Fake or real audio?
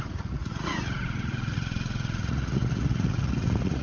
fake